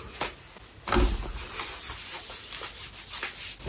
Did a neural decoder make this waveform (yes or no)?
no